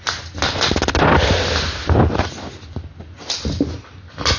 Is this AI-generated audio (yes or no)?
no